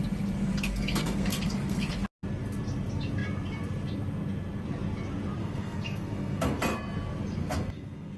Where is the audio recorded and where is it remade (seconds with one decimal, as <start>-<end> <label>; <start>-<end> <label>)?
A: 0.0-0.5 recorded; 0.5-1.9 remade; 1.9-5.4 recorded; 5.4-6.6 remade; 6.6-7.4 recorded; 7.4-8.2 remade

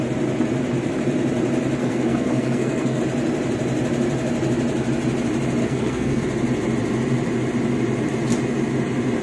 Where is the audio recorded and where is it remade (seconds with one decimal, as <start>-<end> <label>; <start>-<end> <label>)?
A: 0.0-1.8 recorded; 1.8-3.0 remade; 3.0-5.6 recorded; 5.6-6.2 remade; 6.2-9.2 recorded

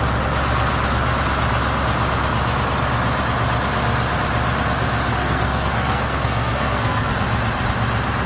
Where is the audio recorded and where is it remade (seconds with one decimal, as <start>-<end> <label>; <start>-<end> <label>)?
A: 0.0-5.1 recorded; 5.1-7.1 remade; 7.1-8.3 recorded